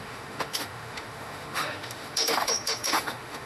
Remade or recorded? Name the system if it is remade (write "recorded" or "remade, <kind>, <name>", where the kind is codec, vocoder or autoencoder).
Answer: remade, autoencoder, DAC-VAE